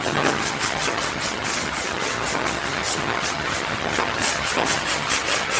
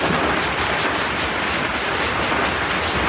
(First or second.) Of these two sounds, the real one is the second